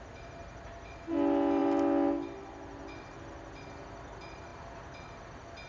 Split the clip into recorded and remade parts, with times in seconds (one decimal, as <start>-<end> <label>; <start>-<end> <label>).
0.0-5.7 recorded